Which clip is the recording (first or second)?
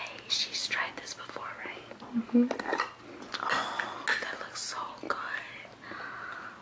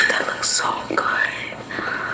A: first